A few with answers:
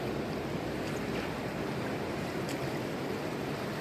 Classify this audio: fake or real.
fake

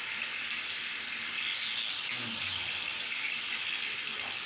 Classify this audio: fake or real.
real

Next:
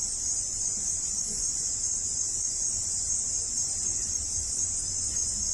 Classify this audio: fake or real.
fake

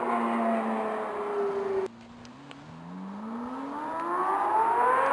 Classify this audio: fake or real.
real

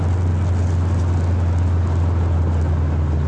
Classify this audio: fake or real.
real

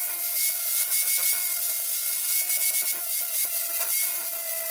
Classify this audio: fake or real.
real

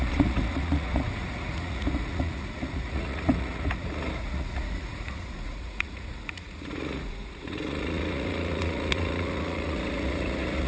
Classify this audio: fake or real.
fake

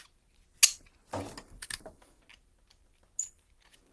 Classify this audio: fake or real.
real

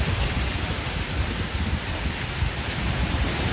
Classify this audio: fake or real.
fake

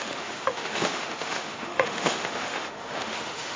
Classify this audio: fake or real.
fake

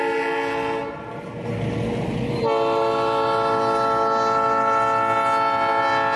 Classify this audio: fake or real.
real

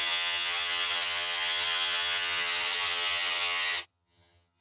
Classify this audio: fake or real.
fake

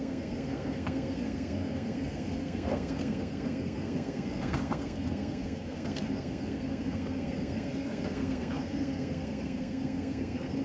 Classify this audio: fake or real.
fake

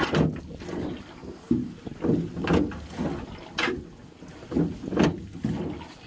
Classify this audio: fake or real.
real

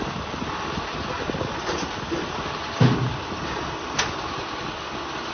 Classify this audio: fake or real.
real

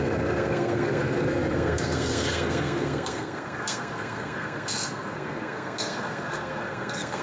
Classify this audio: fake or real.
fake